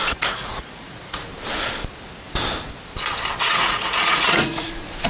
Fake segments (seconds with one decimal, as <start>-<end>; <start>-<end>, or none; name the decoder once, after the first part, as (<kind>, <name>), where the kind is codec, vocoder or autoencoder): 0.0-1.3 (vocoder, Vocos); 3.4-5.1